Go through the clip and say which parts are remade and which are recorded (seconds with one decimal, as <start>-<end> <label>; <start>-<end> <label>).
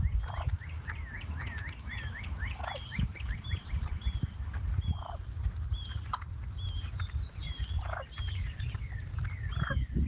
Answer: 0.0-2.3 recorded; 2.3-5.9 remade; 5.9-10.1 recorded